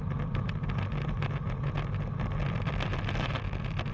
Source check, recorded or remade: recorded